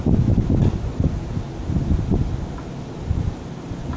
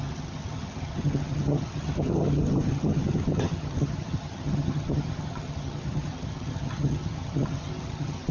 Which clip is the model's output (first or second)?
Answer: second